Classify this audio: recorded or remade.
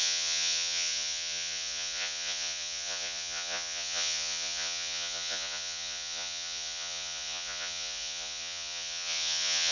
remade